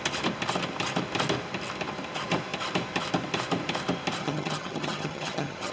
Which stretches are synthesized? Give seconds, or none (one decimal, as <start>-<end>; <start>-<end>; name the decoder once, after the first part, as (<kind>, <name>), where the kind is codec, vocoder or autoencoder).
4.2-5.7 (vocoder, HiFi-GAN)